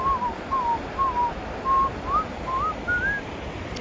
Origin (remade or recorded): recorded